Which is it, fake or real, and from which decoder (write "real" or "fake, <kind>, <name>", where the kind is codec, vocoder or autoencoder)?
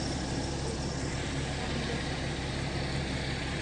real